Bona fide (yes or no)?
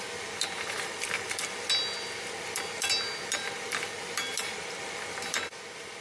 yes